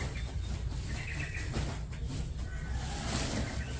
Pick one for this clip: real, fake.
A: real